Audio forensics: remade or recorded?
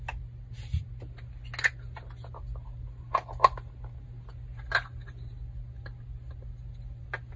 recorded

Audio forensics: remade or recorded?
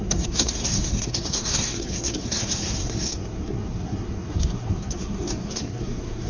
remade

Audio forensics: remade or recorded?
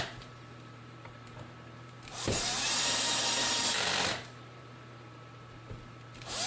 remade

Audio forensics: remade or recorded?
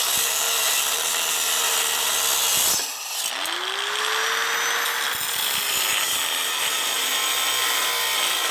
recorded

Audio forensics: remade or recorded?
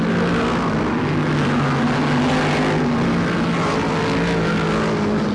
recorded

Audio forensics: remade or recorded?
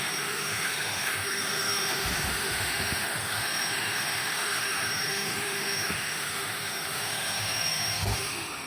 remade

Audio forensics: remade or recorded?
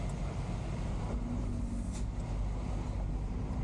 recorded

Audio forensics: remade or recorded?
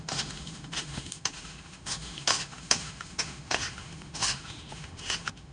remade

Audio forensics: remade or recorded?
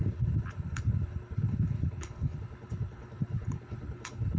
remade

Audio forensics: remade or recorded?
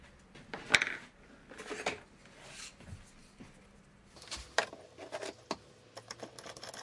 recorded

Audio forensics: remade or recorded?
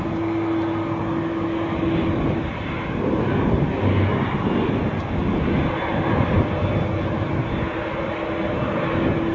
recorded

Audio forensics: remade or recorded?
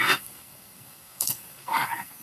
remade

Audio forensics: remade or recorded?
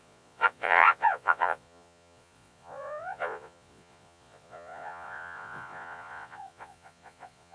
remade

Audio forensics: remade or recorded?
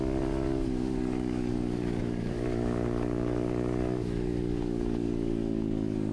remade